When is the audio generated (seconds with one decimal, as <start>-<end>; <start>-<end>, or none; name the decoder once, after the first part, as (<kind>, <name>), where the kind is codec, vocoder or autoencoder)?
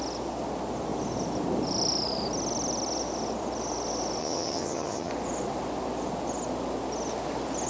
4.2-5.1 (vocoder, HiFi-GAN)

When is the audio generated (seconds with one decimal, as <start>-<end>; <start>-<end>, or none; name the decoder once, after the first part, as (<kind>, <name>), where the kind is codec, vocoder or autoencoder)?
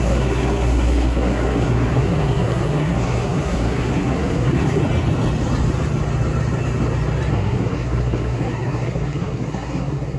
0.0-4.8 (codec, SNAC); 7.3-10.2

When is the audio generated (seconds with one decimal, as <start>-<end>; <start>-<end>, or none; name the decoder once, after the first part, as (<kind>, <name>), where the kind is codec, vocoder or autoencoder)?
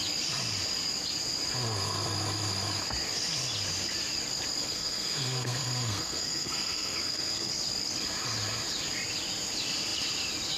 4.6-7.5 (codec, SNAC)